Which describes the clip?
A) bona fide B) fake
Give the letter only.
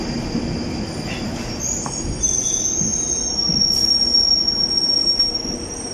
A